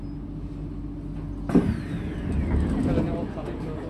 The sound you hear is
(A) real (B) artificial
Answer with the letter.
A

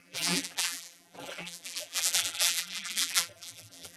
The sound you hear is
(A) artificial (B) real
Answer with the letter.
A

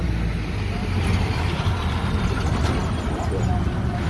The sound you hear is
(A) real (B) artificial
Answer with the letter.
A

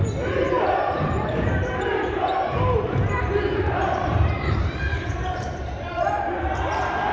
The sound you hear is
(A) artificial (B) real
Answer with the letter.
A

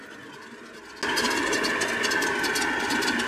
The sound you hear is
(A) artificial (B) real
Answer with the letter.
B